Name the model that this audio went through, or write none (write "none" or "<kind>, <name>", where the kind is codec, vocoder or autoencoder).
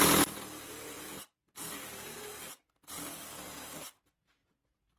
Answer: none